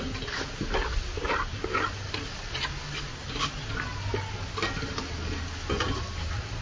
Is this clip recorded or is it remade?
recorded